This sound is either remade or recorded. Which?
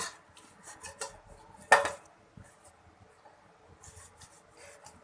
recorded